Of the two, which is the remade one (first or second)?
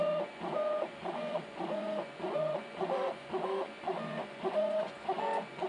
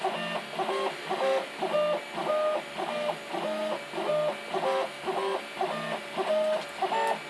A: first